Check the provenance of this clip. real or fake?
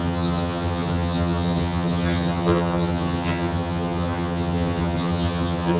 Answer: fake